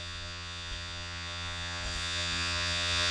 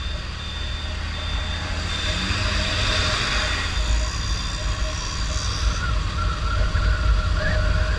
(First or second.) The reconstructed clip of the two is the first